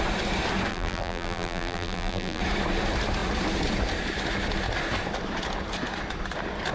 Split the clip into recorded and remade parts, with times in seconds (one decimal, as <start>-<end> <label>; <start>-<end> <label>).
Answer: 0.0-0.7 recorded; 0.7-2.4 remade; 2.4-6.7 recorded